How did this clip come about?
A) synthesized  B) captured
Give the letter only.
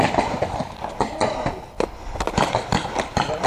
B